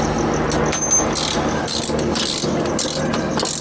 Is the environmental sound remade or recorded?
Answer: recorded